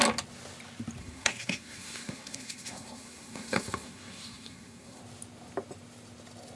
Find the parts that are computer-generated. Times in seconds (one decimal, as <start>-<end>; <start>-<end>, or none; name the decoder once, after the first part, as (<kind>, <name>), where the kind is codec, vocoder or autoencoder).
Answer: 1.0-5.0 (codec, SNAC)

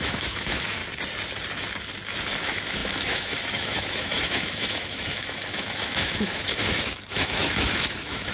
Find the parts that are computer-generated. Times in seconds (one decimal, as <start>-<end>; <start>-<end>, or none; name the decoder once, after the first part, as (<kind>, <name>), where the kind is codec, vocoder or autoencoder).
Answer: 0.0-0.8 (autoencoder, DAC-VAE); 2.4-8.3

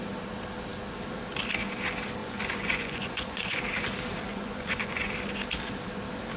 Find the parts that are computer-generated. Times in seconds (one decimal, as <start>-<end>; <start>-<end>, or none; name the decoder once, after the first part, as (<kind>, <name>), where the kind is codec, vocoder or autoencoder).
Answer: 2.2-3.6 (vocoder, Vocos); 4.3-5.1

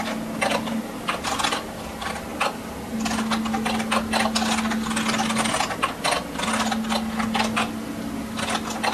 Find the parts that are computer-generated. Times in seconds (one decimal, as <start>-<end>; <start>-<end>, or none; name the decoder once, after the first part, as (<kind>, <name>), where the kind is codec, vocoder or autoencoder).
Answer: 0.0-2.3 (vocoder, BigVGAN v2); 7.4-8.9

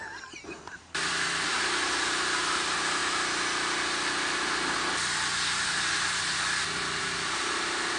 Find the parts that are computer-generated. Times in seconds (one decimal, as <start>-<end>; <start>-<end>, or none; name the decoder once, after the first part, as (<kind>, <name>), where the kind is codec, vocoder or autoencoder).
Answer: 0.0-3.0 (vocoder, BigVGAN v2); 7.0-8.0

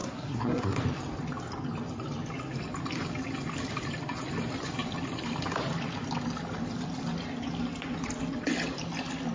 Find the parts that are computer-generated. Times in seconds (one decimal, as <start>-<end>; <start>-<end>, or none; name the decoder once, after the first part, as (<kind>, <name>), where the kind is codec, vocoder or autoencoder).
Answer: 0.0-0.8 (codec, SNAC)